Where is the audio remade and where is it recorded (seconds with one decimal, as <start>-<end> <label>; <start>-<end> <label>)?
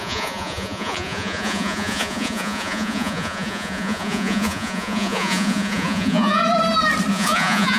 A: 0.0-6.4 remade; 6.4-7.1 recorded; 7.1-7.8 remade